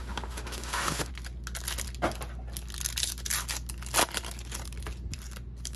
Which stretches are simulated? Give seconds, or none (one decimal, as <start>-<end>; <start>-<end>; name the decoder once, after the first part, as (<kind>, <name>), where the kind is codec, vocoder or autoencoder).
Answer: 0.0-1.1 (autoencoder, DAC-VAE)

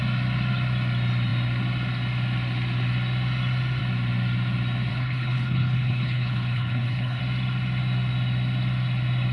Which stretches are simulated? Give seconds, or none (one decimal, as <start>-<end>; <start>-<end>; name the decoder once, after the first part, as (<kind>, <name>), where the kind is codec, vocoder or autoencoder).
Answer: 4.9-7.2 (codec, HILCodec)

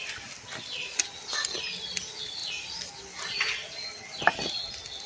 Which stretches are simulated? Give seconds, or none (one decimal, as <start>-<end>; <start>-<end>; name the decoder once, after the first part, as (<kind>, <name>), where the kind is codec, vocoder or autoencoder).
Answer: none

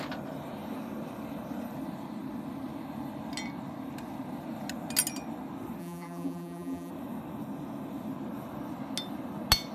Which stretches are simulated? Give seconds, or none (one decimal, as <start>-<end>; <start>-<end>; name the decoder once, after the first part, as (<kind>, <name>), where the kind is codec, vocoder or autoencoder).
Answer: 5.8-6.9 (vocoder, BigVGAN v2)

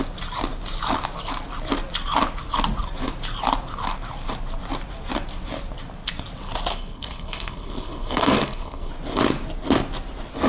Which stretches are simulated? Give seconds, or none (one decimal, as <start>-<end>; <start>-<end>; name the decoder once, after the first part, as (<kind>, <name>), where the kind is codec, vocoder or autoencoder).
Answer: 6.7-8.9 (codec, SNAC)